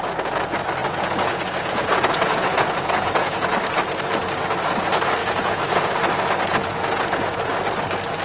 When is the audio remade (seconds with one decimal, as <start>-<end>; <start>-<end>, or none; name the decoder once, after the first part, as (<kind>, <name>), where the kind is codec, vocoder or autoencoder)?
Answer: 0.8-3.5 (vocoder, Vocos); 5.2-6.0; 6.5-7.5